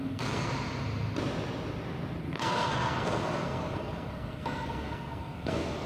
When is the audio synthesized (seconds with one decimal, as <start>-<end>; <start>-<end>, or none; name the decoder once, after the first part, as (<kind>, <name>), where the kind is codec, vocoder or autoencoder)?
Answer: 0.0-0.5 (codec, SNAC); 2.2-5.9